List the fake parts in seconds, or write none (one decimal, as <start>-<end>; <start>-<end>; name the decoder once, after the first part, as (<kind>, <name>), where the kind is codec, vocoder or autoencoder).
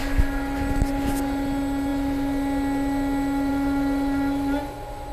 none